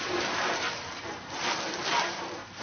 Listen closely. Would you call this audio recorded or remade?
remade